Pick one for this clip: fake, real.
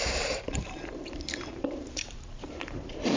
fake